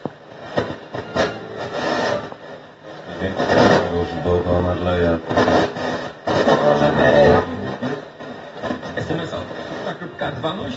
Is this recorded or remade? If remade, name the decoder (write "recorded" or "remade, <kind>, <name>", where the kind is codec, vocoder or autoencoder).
recorded